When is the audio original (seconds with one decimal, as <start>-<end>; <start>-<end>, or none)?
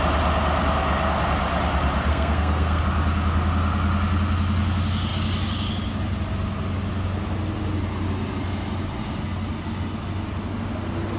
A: 0.0-2.1; 2.8-11.2